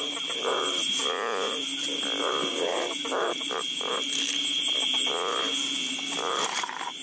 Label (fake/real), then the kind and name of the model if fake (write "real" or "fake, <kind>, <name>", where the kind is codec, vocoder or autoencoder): real